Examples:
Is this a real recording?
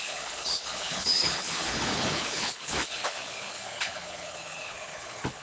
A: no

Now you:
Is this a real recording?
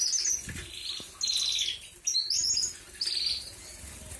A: yes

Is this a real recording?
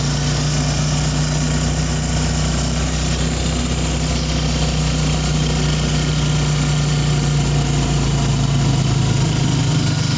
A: yes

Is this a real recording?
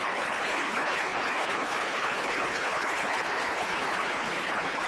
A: no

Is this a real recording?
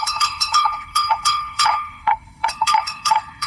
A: no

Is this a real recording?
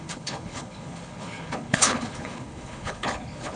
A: no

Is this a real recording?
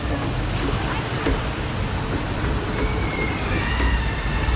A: yes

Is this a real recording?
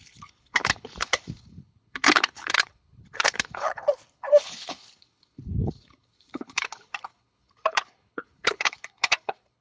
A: no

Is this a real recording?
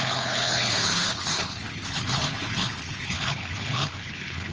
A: no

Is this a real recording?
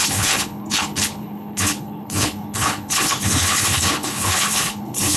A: no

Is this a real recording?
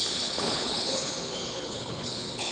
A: no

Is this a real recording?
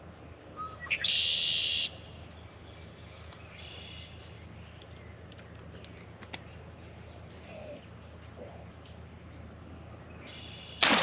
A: yes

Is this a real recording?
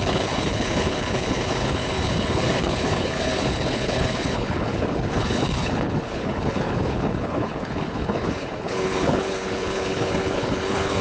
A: no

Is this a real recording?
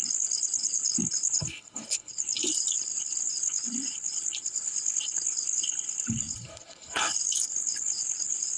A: no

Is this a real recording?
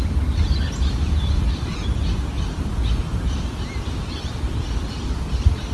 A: yes